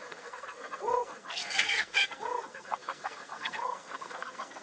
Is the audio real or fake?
fake